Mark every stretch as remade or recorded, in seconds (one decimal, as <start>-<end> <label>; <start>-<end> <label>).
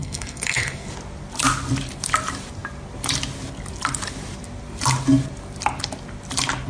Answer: 0.0-0.9 remade; 0.9-6.7 recorded